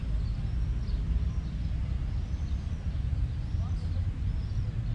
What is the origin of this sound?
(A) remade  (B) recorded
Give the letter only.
B